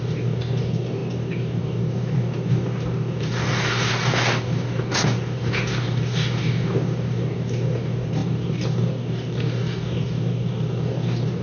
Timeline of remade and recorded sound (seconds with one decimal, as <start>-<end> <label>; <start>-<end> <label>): 0.0-11.4 remade